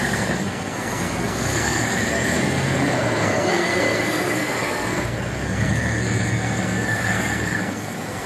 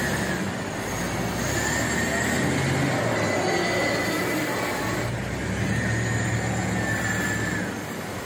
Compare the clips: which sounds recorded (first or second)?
second